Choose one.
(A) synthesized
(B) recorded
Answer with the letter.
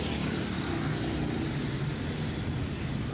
B